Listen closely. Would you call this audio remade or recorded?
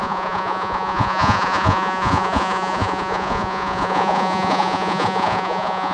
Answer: remade